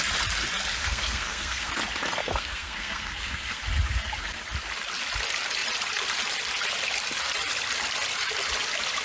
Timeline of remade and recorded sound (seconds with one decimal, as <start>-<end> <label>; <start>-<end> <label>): 0.0-0.8 recorded; 0.8-1.7 remade; 1.7-2.2 recorded; 2.2-3.6 remade; 3.6-9.0 recorded